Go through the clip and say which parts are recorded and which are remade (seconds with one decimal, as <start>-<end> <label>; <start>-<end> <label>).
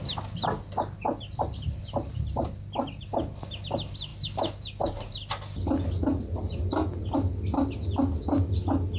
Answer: 0.0-9.0 recorded